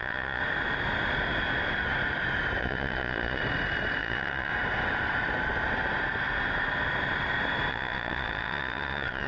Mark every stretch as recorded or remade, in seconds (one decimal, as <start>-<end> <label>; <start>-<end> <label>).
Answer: 0.0-0.4 remade; 0.4-2.6 recorded; 2.6-3.4 remade; 3.4-4.0 recorded; 4.0-4.5 remade; 4.5-7.7 recorded; 7.7-9.3 remade